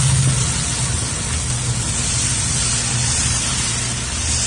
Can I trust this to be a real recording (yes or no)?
yes